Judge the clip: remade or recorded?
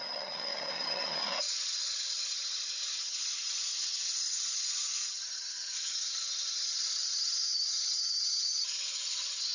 remade